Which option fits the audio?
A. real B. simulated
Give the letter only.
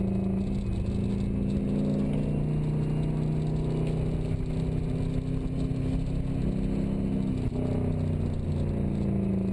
A